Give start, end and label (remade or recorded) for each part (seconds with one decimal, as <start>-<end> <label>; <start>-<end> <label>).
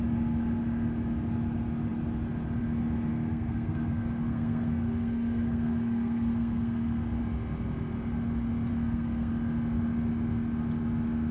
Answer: 0.0-3.1 recorded; 3.1-7.2 remade; 7.2-8.7 recorded; 8.7-9.3 remade; 9.3-11.3 recorded